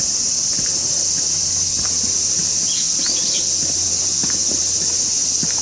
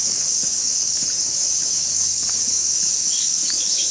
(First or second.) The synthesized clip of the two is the second